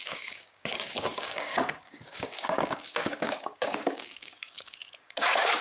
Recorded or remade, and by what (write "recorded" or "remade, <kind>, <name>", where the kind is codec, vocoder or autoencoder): remade, codec, DAC